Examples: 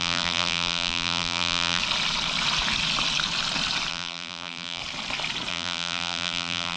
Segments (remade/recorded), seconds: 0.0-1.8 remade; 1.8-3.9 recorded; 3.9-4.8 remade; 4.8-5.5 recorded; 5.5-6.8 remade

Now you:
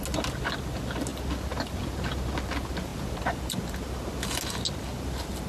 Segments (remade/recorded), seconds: 0.0-5.5 recorded

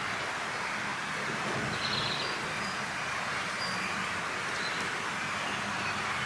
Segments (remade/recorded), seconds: 0.0-6.3 recorded